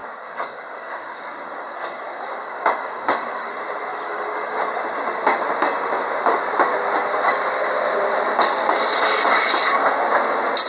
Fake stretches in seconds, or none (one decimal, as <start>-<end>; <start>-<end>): 0.0-3.5; 3.9-4.6